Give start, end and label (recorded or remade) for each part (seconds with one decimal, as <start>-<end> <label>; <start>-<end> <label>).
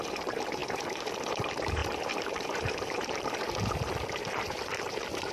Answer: 0.0-5.3 remade